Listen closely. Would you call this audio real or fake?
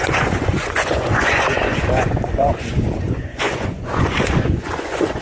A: fake